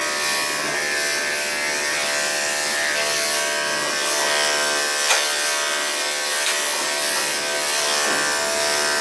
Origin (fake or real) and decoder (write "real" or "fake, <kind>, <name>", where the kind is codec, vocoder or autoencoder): real